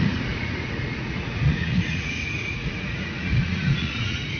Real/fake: fake